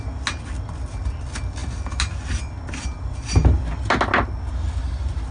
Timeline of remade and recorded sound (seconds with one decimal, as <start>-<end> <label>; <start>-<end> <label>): 0.0-5.3 recorded